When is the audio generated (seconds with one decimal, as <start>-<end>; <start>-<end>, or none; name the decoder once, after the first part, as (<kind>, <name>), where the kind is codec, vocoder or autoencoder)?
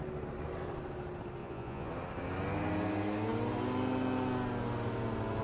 1.4-1.9 (vocoder, Vocos)